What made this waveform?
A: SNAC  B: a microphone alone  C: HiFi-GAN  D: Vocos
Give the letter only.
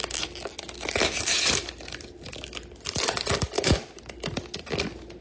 B